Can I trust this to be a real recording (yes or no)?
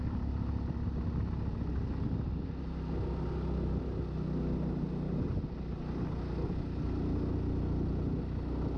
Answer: yes